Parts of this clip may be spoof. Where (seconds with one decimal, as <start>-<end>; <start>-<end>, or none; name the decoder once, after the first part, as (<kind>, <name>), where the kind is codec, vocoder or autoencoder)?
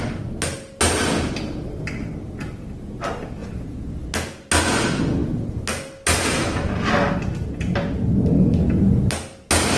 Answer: none